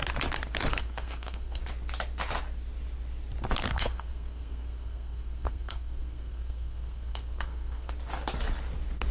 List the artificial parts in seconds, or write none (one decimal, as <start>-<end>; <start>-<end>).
0.7-1.6; 3.7-7.9